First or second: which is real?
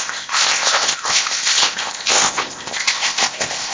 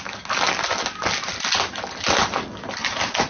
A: second